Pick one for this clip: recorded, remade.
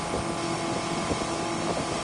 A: recorded